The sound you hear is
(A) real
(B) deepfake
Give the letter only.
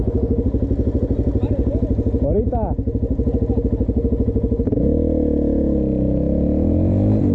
A